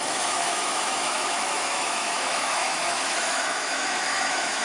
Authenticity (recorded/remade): remade